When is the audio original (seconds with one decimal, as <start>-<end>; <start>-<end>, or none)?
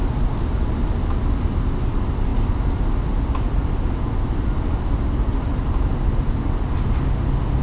0.0-7.6